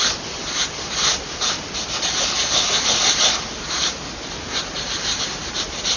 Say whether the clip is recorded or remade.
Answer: recorded